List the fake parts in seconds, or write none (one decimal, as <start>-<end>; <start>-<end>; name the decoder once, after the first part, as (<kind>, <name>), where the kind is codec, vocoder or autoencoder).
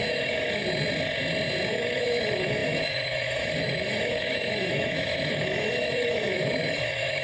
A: 0.0-0.6 (autoencoder, DAC-VAE); 1.7-7.2